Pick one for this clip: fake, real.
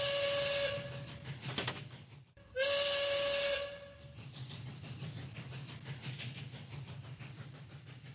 real